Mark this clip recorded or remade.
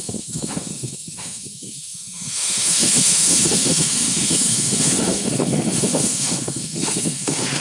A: remade